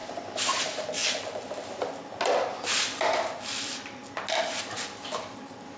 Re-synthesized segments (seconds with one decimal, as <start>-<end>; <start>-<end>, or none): 0.0-0.6